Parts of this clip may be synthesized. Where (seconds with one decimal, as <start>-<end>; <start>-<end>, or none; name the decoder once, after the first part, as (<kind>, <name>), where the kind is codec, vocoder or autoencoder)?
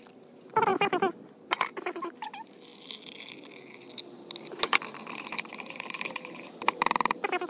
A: none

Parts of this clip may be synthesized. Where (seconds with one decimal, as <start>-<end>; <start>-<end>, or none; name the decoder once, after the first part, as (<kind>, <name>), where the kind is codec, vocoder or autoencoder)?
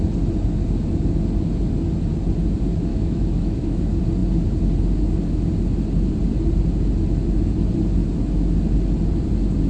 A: 2.9-3.8 (autoencoder, DAC-VAE)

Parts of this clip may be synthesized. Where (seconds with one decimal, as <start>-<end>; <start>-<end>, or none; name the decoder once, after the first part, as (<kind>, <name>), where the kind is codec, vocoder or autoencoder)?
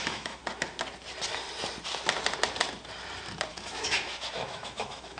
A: 0.0-0.4 (autoencoder, DAC-VAE); 3.5-5.2